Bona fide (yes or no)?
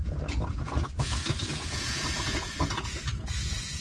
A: no